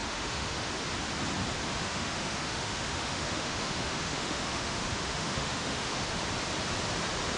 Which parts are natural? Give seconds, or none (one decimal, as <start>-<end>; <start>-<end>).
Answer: 0.7-1.8; 6.2-7.4